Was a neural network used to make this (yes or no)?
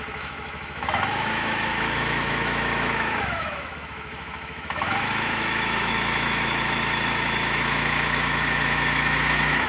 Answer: yes